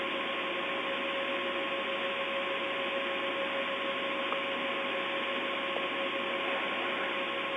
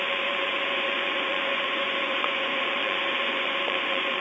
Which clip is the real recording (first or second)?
first